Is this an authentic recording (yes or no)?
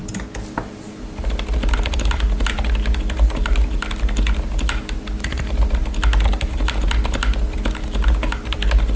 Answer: yes